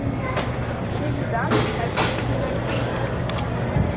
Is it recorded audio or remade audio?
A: recorded